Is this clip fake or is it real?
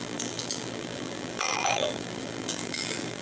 fake